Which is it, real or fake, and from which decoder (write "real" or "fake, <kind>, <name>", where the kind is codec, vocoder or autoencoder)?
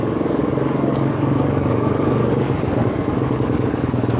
fake, codec, DAC